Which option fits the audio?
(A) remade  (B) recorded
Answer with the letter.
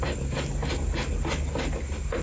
B